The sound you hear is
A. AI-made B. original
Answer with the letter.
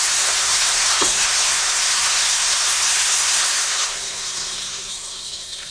A